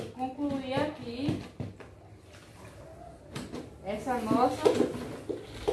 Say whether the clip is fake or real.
real